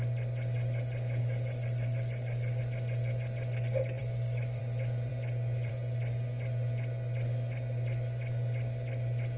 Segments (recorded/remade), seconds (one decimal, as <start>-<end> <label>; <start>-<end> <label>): 0.0-1.2 recorded; 1.2-2.6 remade; 2.6-4.0 recorded; 4.0-4.6 remade; 4.6-9.4 recorded